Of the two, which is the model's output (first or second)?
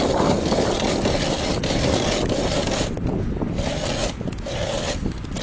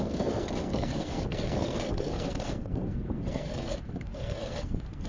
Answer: second